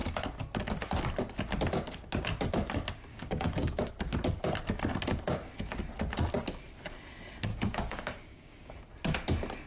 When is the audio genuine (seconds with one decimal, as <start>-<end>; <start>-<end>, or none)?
0.0-3.1; 3.9-7.5; 8.7-9.7